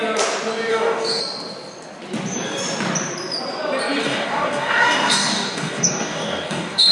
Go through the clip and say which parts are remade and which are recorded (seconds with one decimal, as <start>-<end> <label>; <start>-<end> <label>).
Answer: 0.0-0.7 recorded; 0.7-1.2 remade; 1.2-4.0 recorded; 4.0-6.9 remade